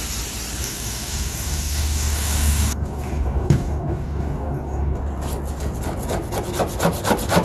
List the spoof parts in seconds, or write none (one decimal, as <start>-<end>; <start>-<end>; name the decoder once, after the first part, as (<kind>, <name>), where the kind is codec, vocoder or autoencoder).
0.6-5.0 (codec, DAC)